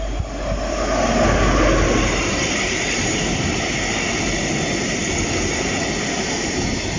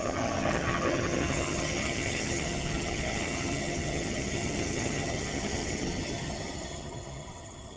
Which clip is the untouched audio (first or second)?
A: first